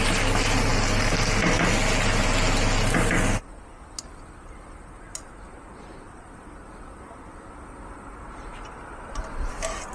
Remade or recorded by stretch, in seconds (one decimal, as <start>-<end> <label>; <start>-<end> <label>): 0.0-9.9 recorded